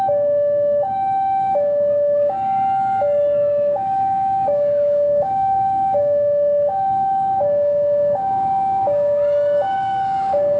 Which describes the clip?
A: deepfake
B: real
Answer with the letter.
A